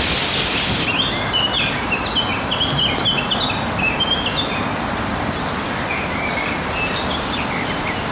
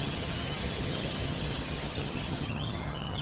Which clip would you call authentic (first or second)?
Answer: first